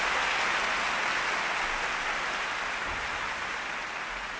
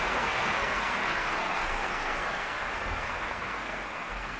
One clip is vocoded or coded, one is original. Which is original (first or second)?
first